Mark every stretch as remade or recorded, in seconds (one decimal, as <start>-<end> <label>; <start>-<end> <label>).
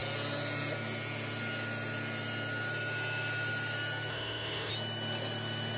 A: 0.0-4.1 recorded; 4.1-4.7 remade; 4.7-5.8 recorded